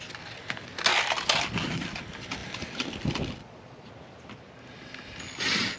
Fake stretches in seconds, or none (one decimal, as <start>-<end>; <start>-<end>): 3.4-3.9